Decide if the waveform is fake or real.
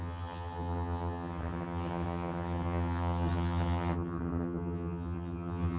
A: fake